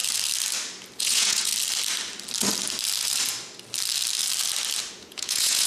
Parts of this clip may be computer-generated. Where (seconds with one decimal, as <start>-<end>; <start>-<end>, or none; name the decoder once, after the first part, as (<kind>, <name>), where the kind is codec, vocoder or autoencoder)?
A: 1.0-1.5 (vocoder, Vocos); 4.9-5.7